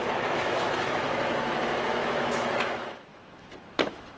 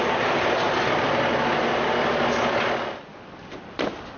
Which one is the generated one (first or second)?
first